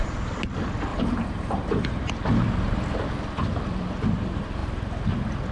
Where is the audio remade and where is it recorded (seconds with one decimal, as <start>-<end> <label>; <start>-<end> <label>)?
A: 0.0-0.9 recorded; 0.9-2.1 remade; 2.1-4.6 recorded; 4.6-5.1 remade; 5.1-5.5 recorded

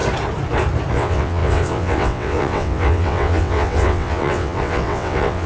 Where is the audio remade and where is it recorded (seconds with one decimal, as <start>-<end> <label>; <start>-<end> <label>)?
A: 0.0-0.9 recorded; 0.9-5.5 remade

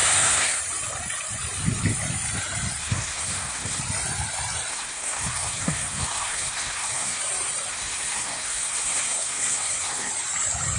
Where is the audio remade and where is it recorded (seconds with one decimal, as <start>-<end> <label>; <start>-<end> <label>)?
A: 0.0-0.6 remade; 0.6-2.8 recorded; 2.8-3.8 remade; 3.8-4.7 recorded; 4.7-7.2 remade; 7.2-7.7 recorded; 7.7-10.1 remade; 10.1-10.8 recorded

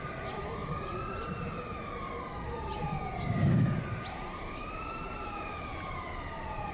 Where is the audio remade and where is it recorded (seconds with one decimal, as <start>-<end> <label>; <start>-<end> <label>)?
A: 0.0-6.7 recorded

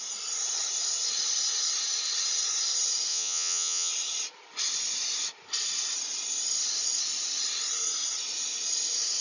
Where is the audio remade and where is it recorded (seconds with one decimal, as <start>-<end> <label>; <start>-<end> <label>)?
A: 0.0-3.1 recorded; 3.1-3.9 remade; 3.9-9.2 recorded